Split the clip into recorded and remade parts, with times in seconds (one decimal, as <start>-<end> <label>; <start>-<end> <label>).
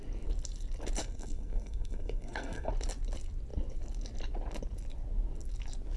0.0-1.0 recorded; 1.0-2.7 remade; 2.7-6.0 recorded